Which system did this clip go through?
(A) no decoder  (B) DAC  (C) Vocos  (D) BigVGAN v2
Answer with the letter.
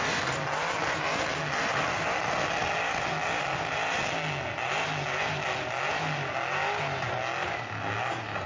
A